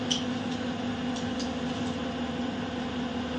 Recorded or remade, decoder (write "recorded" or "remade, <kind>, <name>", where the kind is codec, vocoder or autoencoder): recorded